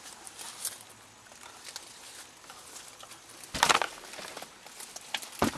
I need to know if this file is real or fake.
real